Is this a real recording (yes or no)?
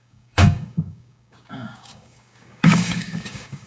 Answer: no